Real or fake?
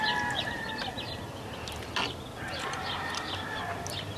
real